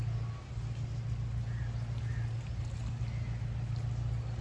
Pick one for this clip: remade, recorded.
recorded